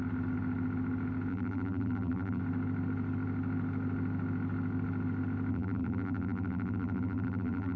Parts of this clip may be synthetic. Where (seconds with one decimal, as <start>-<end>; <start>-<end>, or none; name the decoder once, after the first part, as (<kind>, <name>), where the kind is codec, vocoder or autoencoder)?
1.3-2.4 (vocoder, BigVGAN v2); 5.5-7.8